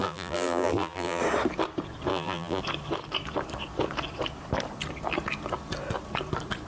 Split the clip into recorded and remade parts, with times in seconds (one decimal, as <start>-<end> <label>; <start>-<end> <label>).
0.0-1.2 remade; 1.2-2.1 recorded; 2.1-2.6 remade; 2.6-6.7 recorded